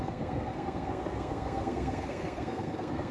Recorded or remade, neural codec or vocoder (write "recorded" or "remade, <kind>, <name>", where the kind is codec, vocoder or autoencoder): remade, codec, SNAC